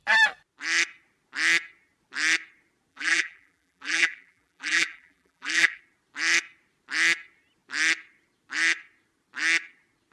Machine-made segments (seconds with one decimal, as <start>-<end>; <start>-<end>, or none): 2.9-5.8